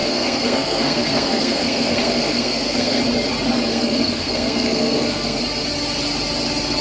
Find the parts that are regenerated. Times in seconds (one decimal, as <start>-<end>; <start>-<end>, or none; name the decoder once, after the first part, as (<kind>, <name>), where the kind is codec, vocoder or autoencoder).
0.0-3.0 (codec, SNAC); 3.7-5.4